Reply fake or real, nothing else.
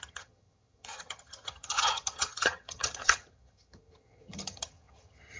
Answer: fake